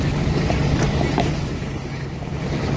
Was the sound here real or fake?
fake